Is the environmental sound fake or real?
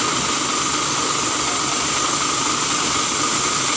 real